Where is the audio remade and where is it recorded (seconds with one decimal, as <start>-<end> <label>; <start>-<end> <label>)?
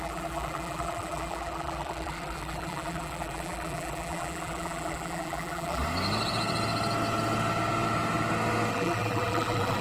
0.0-5.8 remade; 5.8-8.7 recorded; 8.7-9.8 remade